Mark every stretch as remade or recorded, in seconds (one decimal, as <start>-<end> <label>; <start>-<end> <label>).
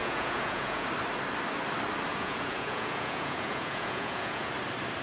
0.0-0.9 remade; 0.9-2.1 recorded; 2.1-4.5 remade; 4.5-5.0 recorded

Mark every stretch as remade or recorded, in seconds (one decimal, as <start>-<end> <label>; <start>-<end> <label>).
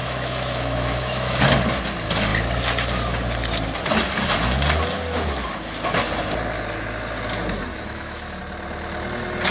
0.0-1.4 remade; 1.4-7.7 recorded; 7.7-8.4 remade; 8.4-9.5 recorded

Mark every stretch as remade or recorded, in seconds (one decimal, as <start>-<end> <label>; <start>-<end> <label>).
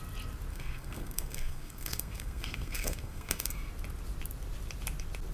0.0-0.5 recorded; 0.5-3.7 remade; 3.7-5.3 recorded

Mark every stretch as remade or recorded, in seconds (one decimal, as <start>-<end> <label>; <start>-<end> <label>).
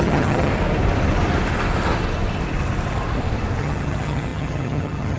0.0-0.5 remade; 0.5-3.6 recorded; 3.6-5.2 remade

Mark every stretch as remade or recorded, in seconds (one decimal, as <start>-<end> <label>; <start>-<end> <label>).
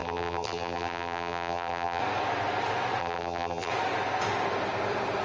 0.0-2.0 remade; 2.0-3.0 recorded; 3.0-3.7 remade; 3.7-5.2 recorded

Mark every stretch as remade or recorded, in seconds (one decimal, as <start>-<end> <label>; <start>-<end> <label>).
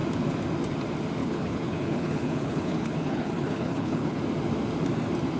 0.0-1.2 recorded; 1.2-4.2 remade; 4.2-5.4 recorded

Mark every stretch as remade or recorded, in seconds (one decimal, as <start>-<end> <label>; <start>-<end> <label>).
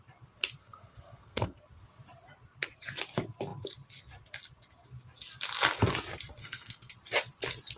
0.0-0.6 recorded; 0.6-1.6 remade; 1.6-6.4 recorded; 6.4-6.9 remade; 6.9-7.8 recorded